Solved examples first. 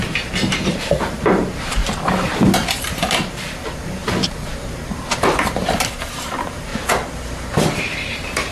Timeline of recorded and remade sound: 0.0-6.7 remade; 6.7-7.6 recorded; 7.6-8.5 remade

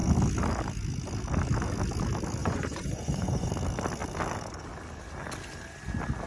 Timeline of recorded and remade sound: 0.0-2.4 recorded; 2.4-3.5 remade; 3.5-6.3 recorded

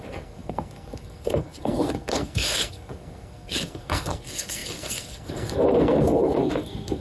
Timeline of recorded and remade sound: 0.0-7.0 remade